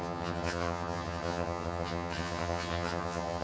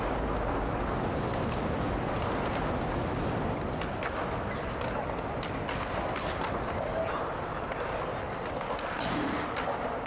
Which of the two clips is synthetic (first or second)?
first